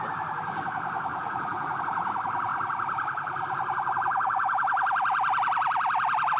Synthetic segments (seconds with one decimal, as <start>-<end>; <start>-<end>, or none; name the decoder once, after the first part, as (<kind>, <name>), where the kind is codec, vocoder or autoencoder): 1.1-1.8 (vocoder, Vocos)